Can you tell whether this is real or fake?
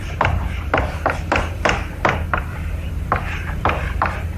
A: fake